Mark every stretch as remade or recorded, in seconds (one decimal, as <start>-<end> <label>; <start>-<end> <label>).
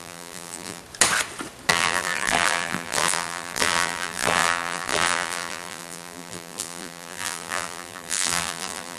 0.0-0.8 remade; 0.8-1.7 recorded; 1.7-9.0 remade